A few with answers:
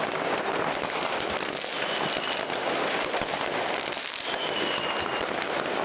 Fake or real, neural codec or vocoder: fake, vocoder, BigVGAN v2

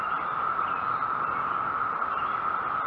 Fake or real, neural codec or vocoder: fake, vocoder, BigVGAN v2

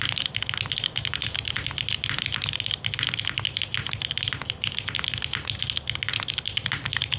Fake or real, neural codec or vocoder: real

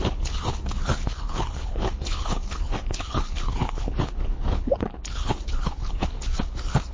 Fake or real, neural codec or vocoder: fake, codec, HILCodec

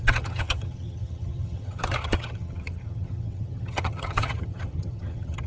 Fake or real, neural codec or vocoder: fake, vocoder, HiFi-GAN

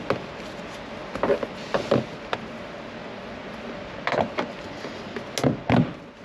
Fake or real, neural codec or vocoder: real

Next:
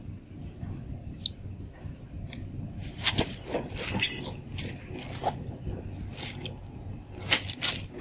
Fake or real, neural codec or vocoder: real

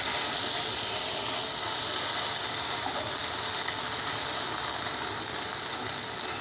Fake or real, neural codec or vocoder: real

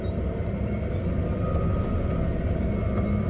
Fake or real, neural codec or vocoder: real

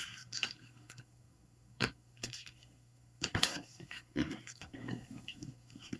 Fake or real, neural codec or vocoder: fake, codec, SNAC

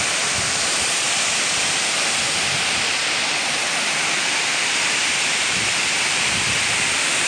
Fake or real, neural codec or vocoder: fake, vocoder, BigVGAN v2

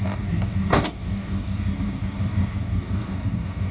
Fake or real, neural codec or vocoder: fake, codec, DAC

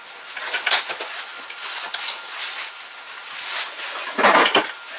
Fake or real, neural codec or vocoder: real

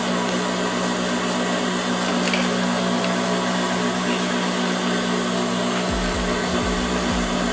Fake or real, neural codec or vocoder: real